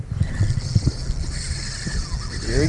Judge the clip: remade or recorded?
recorded